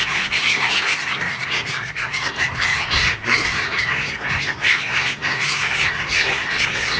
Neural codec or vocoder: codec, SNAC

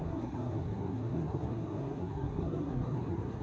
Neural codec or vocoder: codec, SNAC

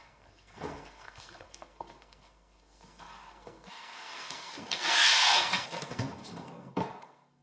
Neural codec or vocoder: codec, SNAC